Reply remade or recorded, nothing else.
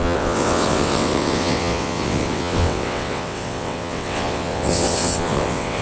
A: remade